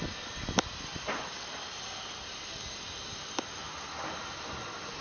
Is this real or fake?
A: real